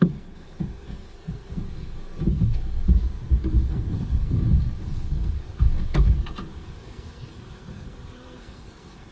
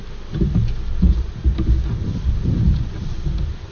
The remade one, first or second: first